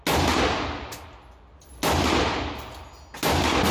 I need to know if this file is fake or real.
real